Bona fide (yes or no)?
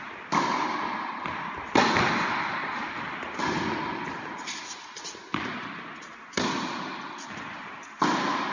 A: yes